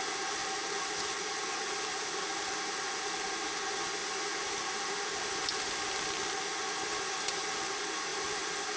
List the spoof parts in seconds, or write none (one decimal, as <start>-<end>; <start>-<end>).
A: 0.4-3.0; 4.0-5.0